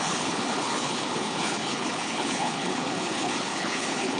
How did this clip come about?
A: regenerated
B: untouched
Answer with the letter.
A